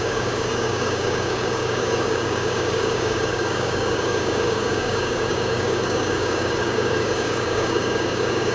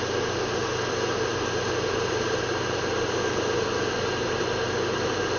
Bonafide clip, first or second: second